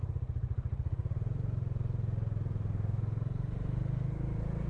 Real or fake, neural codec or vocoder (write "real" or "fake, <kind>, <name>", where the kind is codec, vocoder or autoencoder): real